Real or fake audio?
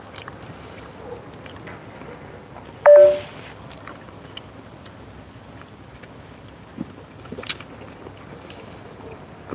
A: real